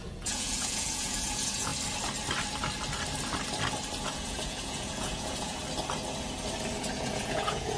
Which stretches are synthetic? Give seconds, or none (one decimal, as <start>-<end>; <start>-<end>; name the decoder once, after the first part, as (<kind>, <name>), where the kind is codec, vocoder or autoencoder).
0.0-1.7 (vocoder, Vocos); 4.0-5.6; 6.8-7.8